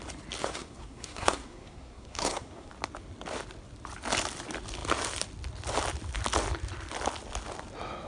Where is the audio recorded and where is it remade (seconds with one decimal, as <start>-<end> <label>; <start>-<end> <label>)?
0.0-0.4 recorded; 0.4-2.7 remade; 2.7-8.1 recorded